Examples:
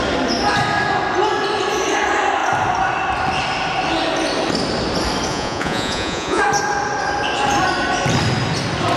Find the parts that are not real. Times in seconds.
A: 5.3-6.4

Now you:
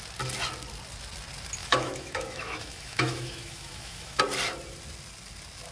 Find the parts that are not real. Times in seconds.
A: 1.6-4.2

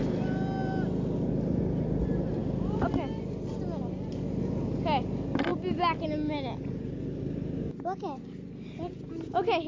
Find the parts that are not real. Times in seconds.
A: none

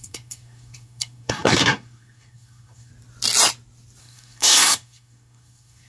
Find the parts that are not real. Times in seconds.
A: 0.0-2.9; 4.0-5.9

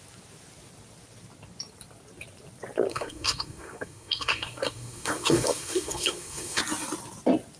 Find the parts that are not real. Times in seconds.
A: 2.9-6.6

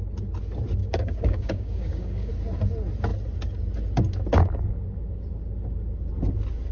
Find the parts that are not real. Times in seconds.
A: 0.8-2.3